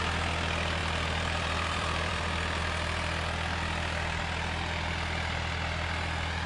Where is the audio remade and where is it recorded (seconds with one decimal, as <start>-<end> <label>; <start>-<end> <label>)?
0.0-0.8 recorded; 0.8-2.6 remade; 2.6-6.5 recorded